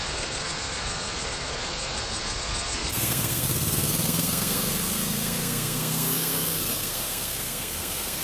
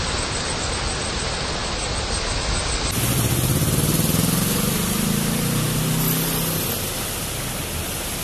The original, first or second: second